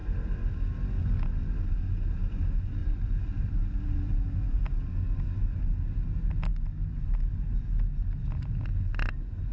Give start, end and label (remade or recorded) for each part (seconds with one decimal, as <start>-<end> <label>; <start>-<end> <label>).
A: 0.0-2.8 recorded; 2.8-4.6 remade; 4.6-6.5 recorded; 6.5-7.2 remade; 7.2-9.5 recorded